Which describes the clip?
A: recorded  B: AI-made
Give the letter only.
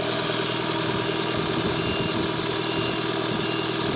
A